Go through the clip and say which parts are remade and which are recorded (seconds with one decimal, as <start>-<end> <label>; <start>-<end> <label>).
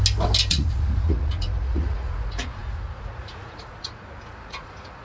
0.0-0.5 recorded; 0.5-5.0 remade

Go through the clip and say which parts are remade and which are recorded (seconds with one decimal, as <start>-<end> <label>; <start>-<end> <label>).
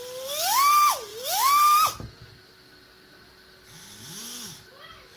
0.0-5.2 recorded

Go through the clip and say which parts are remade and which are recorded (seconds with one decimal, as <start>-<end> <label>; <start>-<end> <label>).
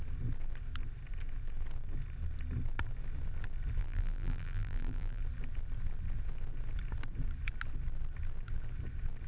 0.0-3.8 recorded; 3.8-5.2 remade; 5.2-9.3 recorded